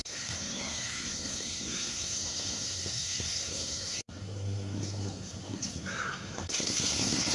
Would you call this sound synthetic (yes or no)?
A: yes